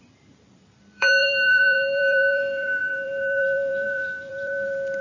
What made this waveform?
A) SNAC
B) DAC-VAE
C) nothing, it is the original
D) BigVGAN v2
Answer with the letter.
D